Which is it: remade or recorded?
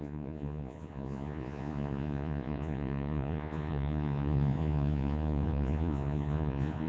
remade